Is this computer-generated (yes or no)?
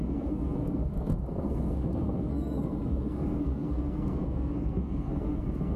yes